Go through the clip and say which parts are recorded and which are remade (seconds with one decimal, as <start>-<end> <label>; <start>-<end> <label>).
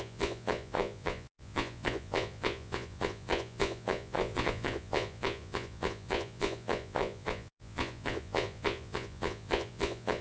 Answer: 0.0-10.2 remade